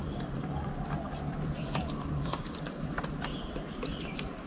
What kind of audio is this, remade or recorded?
remade